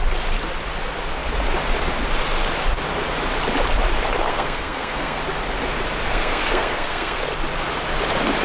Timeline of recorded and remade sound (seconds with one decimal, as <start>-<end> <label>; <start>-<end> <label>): 0.0-4.3 recorded; 4.3-5.2 remade; 5.2-6.1 recorded; 6.1-7.2 remade; 7.2-8.4 recorded